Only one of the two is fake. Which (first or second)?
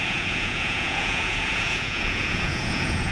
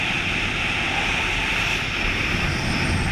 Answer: first